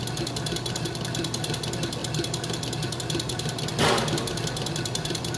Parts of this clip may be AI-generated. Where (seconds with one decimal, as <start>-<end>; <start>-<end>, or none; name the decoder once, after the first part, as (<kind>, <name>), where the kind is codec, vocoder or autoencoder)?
none